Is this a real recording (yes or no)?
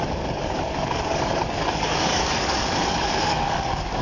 no